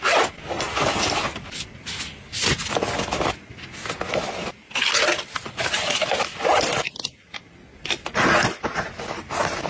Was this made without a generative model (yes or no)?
yes